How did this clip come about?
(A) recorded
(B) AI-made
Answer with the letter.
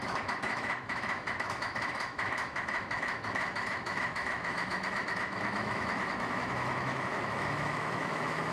B